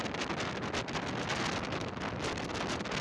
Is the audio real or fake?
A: real